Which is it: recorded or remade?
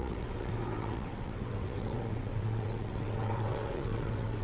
remade